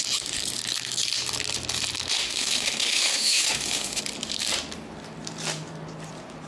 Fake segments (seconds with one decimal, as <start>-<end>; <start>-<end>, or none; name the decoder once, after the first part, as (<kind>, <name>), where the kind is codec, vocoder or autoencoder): 2.2-4.0 (autoencoder, DAC-VAE)